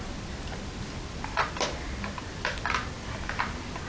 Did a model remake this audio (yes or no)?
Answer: no